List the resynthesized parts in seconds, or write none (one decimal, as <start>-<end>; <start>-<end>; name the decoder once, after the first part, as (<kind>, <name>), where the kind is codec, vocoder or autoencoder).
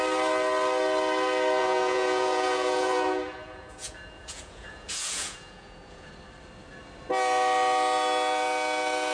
1.6-6.1 (vocoder, Vocos)